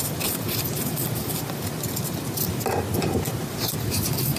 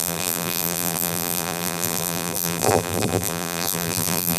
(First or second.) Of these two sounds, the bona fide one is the first